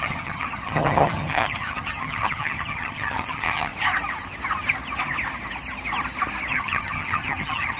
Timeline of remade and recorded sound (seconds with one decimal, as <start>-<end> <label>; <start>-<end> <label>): 0.0-3.7 remade; 3.7-6.5 recorded; 6.5-7.8 remade